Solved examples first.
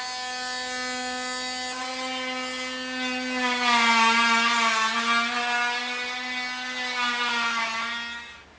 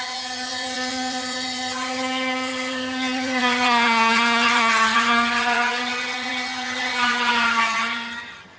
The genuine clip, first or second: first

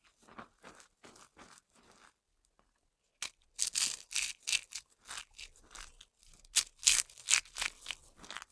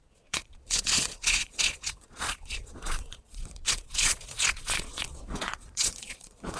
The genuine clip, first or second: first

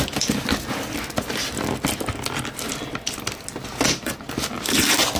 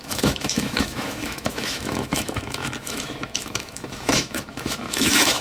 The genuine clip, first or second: first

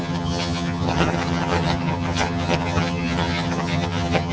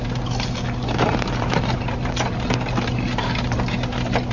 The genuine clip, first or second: second